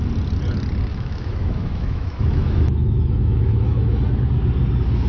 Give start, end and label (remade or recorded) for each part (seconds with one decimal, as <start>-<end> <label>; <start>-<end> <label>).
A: 0.0-0.9 recorded; 0.9-4.0 remade; 4.0-5.1 recorded